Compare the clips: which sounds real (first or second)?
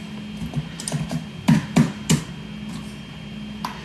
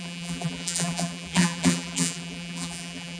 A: first